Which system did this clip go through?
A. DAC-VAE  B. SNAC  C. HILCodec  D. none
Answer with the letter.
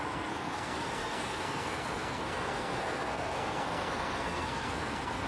B